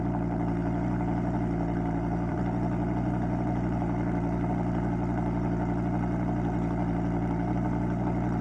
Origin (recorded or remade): remade